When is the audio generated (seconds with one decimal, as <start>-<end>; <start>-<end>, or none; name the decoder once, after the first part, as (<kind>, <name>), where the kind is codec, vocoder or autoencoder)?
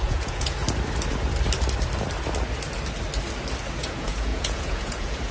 0.0-0.6 (vocoder, Vocos); 3.8-5.3